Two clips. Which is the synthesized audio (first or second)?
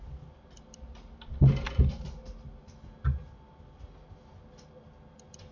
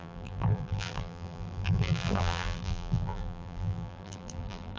second